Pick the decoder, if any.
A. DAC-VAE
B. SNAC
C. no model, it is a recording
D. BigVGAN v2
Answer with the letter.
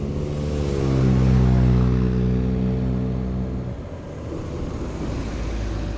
C